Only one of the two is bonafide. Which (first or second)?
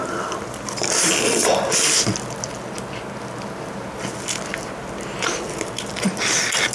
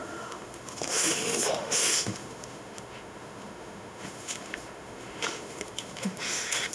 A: first